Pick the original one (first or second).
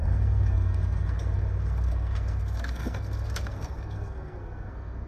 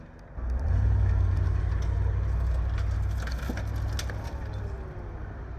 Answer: second